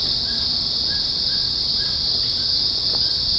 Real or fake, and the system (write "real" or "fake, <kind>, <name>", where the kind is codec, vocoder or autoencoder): real